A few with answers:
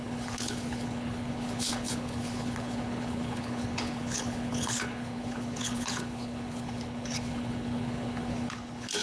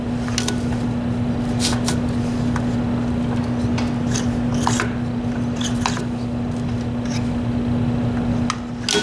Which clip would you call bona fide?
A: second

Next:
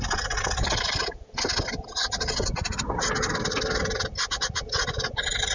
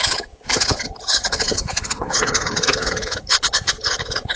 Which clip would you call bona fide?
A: first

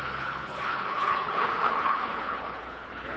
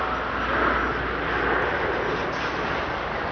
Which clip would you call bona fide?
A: second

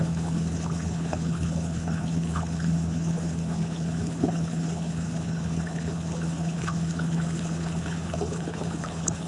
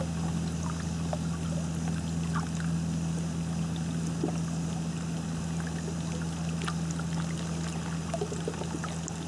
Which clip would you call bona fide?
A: second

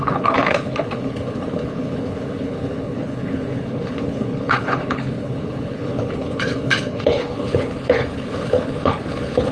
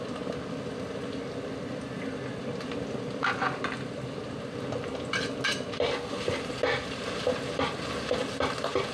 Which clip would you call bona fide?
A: second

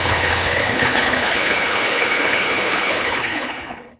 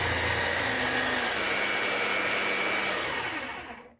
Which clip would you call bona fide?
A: second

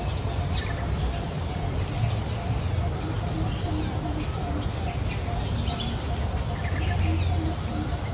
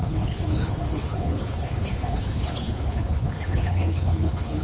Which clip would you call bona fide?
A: first